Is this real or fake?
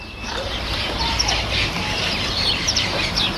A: fake